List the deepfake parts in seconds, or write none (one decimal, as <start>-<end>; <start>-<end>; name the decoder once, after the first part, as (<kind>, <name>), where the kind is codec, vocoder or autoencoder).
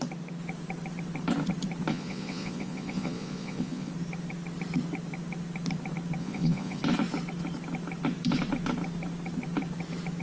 1.9-3.9 (vocoder, Vocos); 6.2-6.8